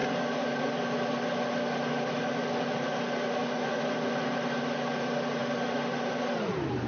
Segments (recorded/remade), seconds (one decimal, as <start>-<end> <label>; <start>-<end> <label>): 0.0-3.4 recorded; 3.4-4.3 remade; 4.3-6.9 recorded